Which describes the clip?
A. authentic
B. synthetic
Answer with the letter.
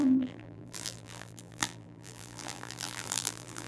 B